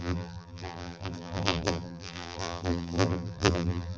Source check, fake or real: fake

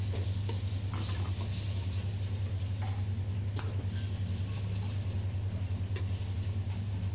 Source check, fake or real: real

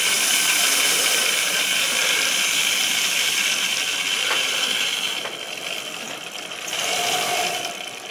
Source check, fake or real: fake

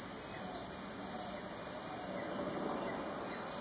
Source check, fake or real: real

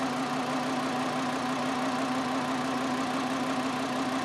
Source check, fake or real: real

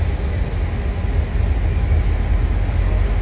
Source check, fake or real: real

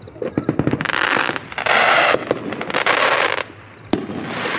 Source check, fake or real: fake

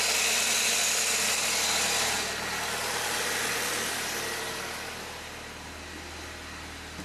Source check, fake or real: real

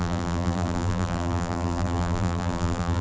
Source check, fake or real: fake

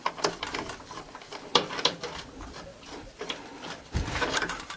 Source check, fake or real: fake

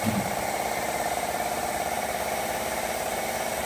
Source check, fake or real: fake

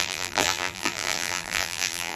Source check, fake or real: fake